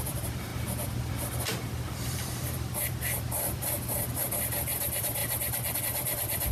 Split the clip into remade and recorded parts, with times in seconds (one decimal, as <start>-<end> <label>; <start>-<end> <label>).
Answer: 0.0-0.5 remade; 0.5-1.0 recorded; 1.0-5.2 remade; 5.2-5.8 recorded; 5.8-6.5 remade